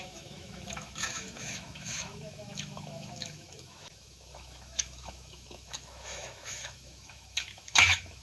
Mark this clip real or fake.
fake